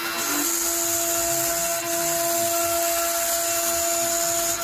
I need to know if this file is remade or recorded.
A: recorded